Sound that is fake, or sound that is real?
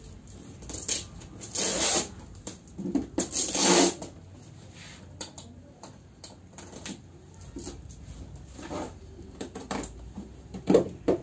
real